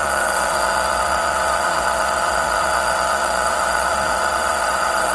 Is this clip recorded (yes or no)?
no